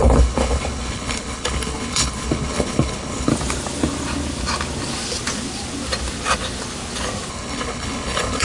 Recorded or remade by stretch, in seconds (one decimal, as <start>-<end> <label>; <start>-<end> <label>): 0.0-3.3 remade; 3.3-7.3 recorded; 7.3-8.4 remade